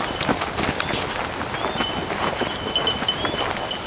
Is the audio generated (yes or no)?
no